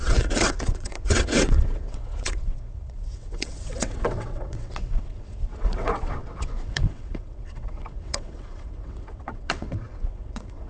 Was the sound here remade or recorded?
remade